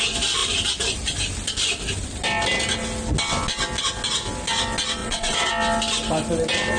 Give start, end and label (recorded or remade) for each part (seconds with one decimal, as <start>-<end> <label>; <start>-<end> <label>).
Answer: 0.0-5.0 recorded; 5.0-5.5 remade; 5.5-6.8 recorded